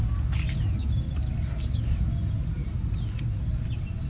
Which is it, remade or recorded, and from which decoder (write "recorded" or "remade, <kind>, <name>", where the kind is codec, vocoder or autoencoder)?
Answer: recorded